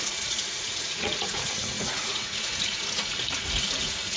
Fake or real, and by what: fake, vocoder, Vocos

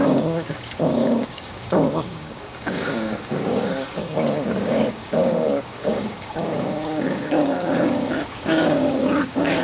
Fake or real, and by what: fake, codec, DAC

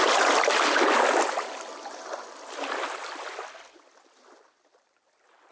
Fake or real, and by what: real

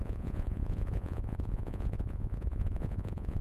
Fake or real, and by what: fake, vocoder, Vocos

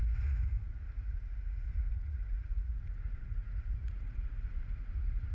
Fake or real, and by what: fake, vocoder, Vocos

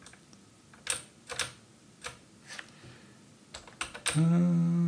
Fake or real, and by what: real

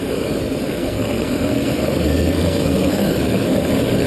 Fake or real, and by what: fake, codec, SNAC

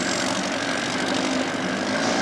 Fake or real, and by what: real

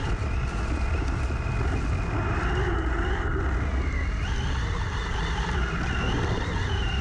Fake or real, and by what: real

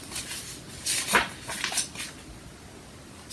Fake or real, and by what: real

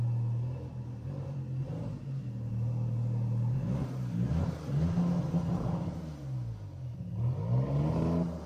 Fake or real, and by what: real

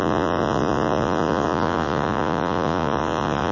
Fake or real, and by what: fake, vocoder, Vocos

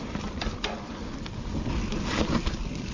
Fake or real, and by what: real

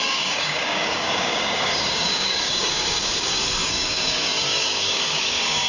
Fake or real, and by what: fake, codec, DAC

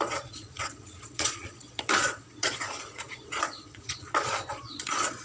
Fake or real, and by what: fake, vocoder, Vocos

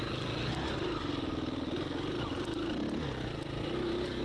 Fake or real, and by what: real